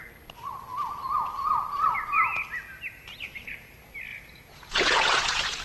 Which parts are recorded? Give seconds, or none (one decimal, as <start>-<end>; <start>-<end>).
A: 0.0-4.1